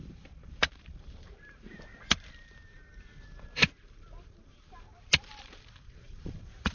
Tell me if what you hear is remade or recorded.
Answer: remade